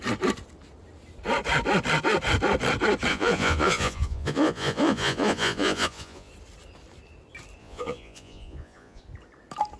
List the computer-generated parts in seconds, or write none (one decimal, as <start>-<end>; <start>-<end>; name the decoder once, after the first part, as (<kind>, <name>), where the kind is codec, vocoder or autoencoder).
3.1-6.3 (vocoder, Vocos); 7.6-9.0